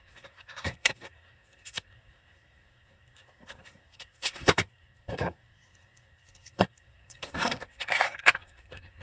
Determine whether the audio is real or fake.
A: fake